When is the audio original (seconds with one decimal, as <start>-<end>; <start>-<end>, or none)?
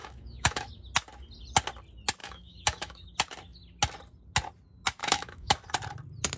0.7-2.2; 3.1-5.0; 5.5-6.4